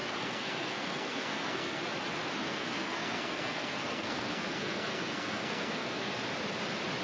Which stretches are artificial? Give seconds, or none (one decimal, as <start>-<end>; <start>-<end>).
0.0-1.8; 2.4-6.2